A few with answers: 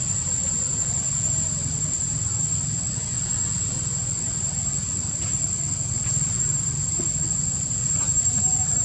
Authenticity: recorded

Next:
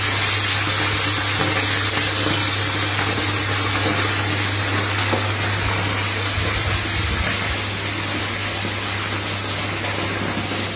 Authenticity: recorded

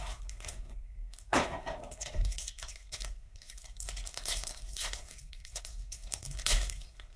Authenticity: remade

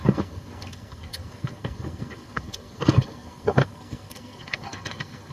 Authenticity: remade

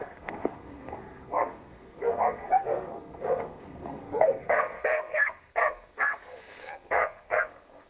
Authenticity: remade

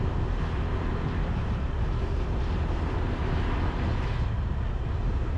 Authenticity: recorded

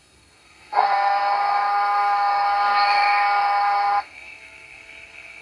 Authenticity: remade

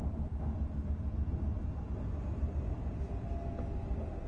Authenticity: recorded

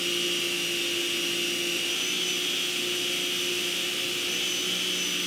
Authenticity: recorded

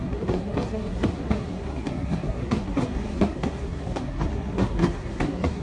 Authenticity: remade